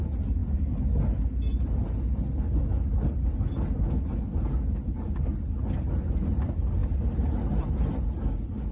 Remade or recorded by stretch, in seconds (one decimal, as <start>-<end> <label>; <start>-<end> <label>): 0.0-8.7 recorded